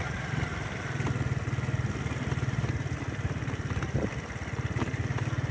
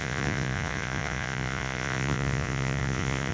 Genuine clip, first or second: first